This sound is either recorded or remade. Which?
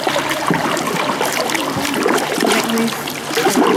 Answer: recorded